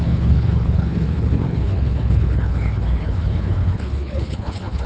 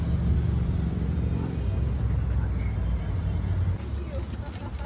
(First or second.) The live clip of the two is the second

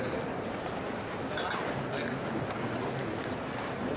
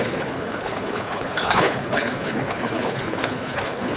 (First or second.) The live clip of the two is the first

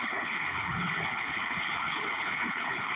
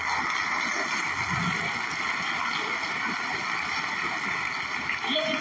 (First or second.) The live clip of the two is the second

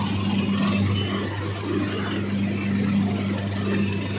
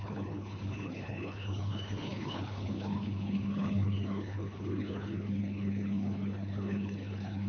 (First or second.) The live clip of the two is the first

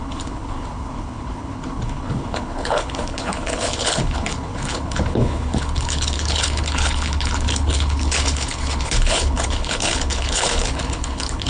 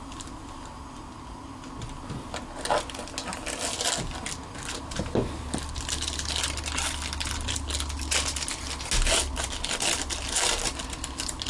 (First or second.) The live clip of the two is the second